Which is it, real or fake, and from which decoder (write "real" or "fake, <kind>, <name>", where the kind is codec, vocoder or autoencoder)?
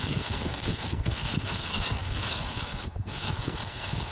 fake, codec, SNAC